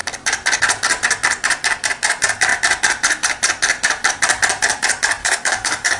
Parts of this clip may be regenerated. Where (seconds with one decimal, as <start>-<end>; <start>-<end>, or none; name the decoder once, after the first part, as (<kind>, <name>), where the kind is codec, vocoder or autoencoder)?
5.2-6.0 (codec, DAC)